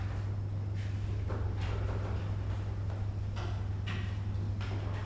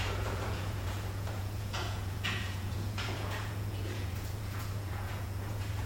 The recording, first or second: first